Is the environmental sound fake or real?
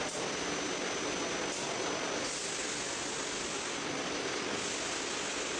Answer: real